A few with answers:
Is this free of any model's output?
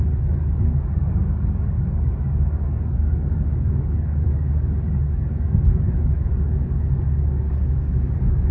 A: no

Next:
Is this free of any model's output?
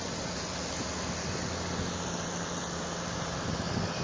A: yes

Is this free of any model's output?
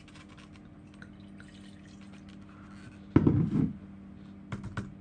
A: yes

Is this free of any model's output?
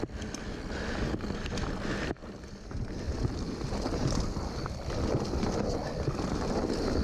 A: yes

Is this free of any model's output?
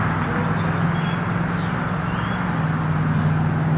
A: yes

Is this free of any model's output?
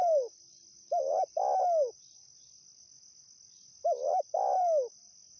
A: yes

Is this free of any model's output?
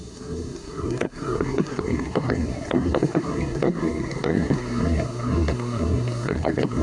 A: no